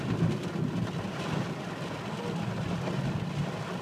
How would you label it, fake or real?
real